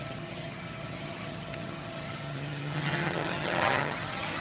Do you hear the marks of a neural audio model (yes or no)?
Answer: yes